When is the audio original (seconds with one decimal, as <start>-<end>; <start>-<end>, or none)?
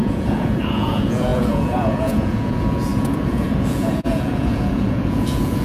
none